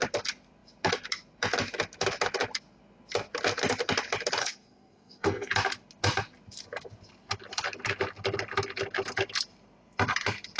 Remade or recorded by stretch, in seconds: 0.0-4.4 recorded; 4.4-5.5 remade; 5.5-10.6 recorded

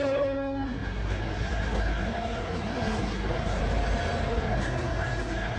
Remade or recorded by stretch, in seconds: 0.0-3.6 remade; 3.6-4.3 recorded; 4.3-5.6 remade